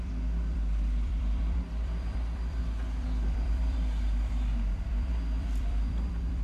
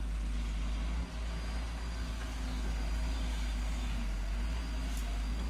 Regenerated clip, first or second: first